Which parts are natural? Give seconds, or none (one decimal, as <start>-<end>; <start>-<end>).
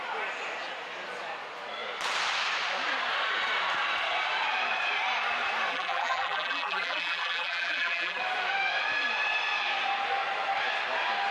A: 0.0-5.7; 8.2-11.3